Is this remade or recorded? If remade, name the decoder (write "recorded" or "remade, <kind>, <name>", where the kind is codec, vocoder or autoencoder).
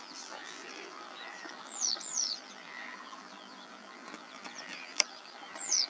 remade, vocoder, BigVGAN v2